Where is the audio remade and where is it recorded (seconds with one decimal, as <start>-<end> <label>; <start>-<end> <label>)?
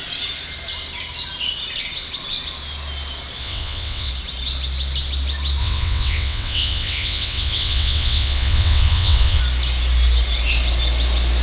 0.0-3.4 recorded; 3.4-4.1 remade; 4.1-5.6 recorded; 5.6-9.4 remade; 9.4-11.4 recorded